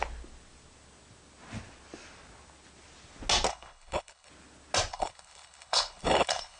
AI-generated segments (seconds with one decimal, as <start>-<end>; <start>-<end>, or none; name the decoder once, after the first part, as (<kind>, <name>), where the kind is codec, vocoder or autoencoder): 3.5-4.3 (codec, HILCodec); 4.9-6.6